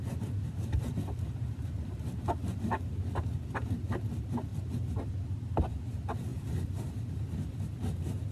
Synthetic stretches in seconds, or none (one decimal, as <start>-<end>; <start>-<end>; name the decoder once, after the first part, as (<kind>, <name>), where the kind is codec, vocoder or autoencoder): none